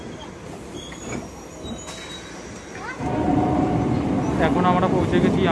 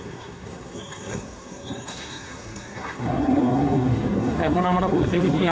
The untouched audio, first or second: first